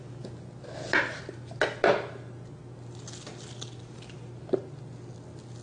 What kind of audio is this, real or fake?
real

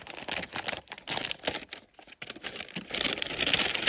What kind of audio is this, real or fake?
real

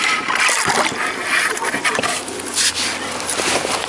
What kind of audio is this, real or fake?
real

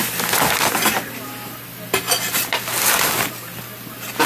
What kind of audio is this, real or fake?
real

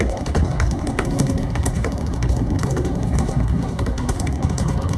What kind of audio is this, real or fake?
fake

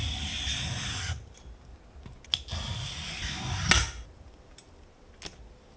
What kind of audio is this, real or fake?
real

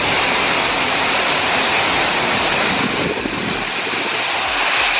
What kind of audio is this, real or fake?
real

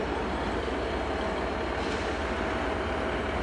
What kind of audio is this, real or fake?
real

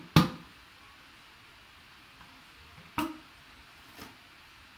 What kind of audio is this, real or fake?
real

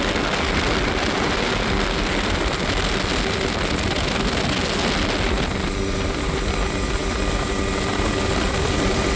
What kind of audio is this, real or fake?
real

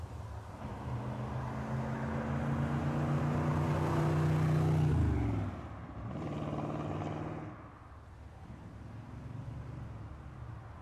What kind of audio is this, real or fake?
real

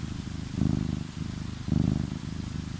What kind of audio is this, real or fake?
real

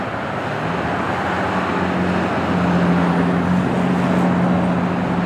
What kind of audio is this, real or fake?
real